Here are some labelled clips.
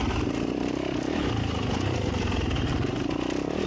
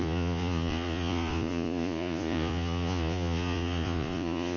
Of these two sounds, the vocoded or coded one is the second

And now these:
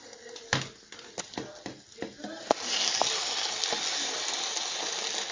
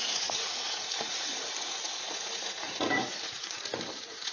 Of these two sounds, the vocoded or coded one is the second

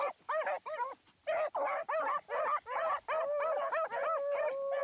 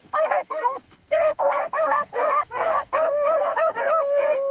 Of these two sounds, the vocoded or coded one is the second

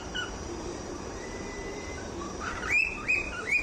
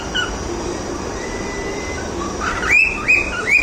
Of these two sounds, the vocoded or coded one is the first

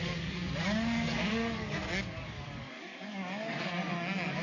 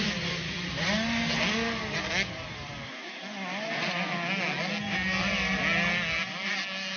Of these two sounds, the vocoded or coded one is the first